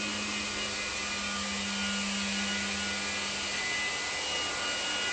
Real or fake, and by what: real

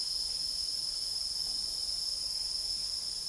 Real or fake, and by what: real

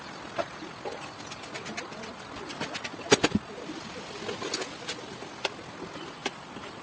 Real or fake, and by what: real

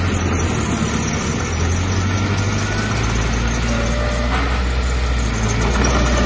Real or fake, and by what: real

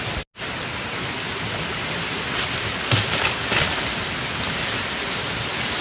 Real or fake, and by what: real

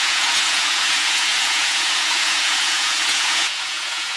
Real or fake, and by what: fake, vocoder, Vocos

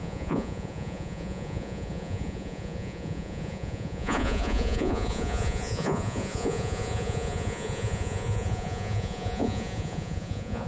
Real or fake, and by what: fake, vocoder, Vocos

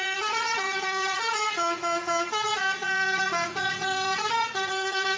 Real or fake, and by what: fake, vocoder, Vocos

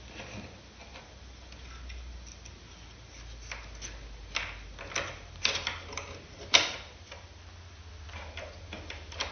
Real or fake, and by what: real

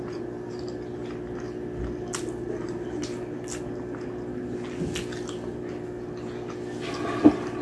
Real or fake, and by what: real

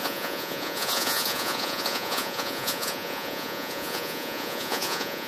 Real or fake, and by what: fake, vocoder, Vocos